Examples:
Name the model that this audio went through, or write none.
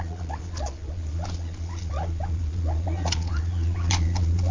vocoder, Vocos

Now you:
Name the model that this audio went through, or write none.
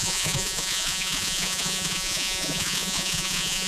vocoder, Vocos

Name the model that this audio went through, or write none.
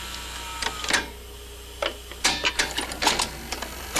none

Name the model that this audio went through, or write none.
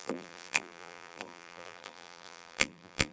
vocoder, BigVGAN v2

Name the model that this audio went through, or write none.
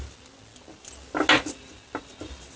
none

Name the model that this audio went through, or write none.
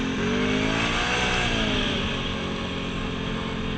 none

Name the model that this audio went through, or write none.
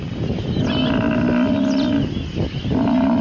none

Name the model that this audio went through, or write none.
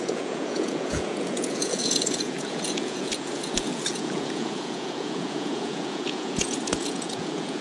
vocoder, Vocos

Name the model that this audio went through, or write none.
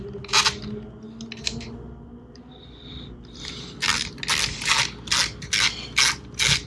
none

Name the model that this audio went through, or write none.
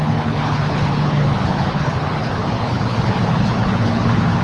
codec, HILCodec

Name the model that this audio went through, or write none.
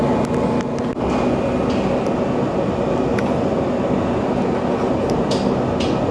none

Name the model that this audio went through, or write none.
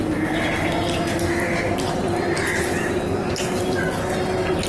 none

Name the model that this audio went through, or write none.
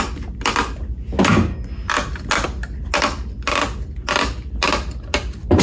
none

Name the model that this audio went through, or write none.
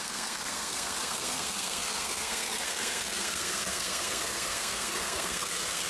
codec, SNAC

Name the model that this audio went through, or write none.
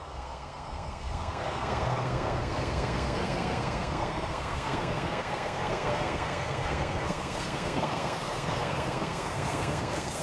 codec, SNAC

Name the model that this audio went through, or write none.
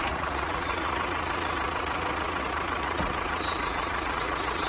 vocoder, Vocos